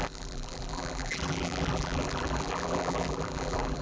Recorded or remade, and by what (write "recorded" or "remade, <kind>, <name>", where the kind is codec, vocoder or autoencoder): remade, vocoder, BigVGAN v2